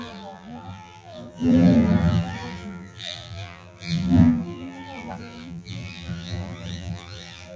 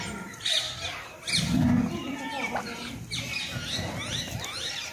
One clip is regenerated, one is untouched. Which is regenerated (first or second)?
first